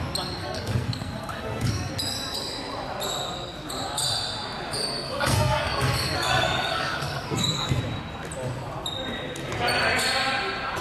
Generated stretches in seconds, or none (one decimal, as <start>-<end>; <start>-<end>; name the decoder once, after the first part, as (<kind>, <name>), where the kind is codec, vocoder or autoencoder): 0.4-1.9 (codec, SNAC); 4.8-7.8